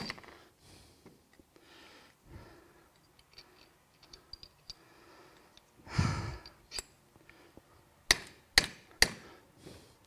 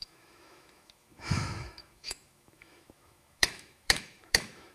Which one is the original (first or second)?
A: first